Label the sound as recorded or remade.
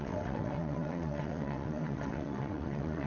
remade